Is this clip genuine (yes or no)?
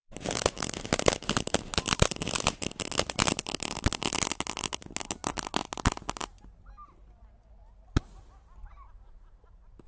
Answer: yes